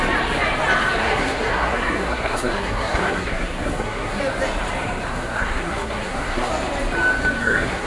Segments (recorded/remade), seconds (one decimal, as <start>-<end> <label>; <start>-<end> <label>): 0.0-1.0 recorded; 1.0-4.2 remade; 4.2-5.1 recorded; 5.1-6.5 remade; 6.5-7.4 recorded; 7.4-7.9 remade